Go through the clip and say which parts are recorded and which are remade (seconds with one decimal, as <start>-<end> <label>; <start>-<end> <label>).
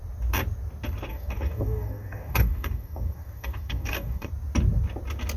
0.0-1.1 recorded; 1.1-4.3 remade; 4.3-5.4 recorded